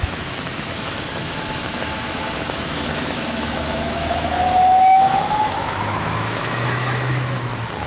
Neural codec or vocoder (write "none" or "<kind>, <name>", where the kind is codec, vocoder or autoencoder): autoencoder, DAC-VAE